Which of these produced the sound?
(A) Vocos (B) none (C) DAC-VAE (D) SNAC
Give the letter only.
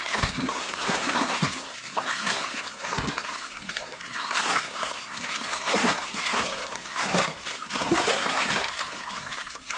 D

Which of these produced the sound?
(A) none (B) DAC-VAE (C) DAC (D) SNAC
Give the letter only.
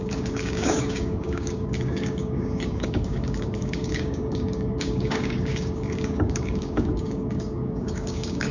C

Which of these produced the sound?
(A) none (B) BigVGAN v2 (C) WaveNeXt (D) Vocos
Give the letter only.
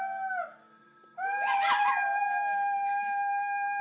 A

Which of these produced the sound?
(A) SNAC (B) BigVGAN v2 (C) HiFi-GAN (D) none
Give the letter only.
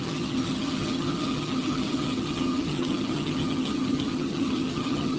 C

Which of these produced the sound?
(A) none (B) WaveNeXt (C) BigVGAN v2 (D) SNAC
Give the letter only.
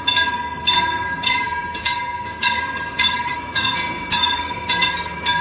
D